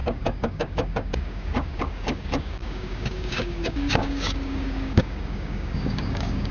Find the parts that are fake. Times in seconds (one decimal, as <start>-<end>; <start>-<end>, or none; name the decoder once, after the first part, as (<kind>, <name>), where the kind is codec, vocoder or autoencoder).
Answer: 0.0-6.5 (codec, DAC)